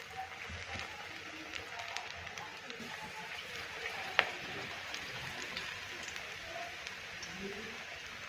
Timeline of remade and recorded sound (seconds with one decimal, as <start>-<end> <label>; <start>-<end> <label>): 0.0-2.5 recorded; 2.5-5.3 remade; 5.3-8.3 recorded